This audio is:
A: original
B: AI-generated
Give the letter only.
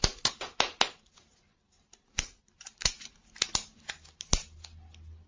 A